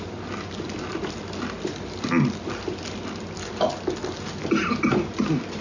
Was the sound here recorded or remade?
recorded